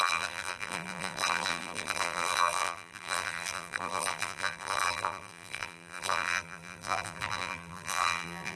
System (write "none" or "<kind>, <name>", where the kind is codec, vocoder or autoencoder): vocoder, BigVGAN v2